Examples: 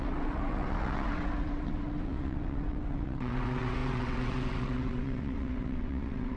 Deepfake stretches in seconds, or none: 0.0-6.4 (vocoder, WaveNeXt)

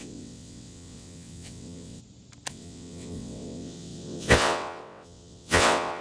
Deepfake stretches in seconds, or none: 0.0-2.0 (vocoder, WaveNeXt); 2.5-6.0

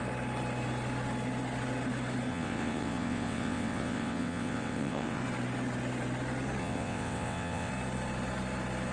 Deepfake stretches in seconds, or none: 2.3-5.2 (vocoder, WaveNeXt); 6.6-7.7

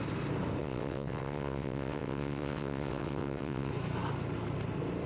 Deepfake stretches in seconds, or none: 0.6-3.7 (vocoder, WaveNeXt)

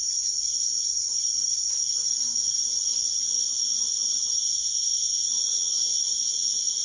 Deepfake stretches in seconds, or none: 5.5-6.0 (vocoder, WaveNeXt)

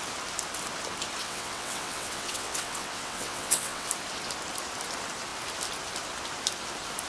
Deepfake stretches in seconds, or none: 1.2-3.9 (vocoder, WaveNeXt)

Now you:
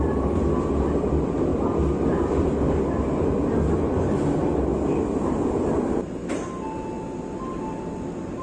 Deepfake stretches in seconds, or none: none

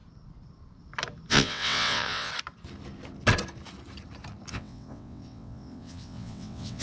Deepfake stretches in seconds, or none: 1.3-2.3 (vocoder, WaveNeXt); 4.5-6.8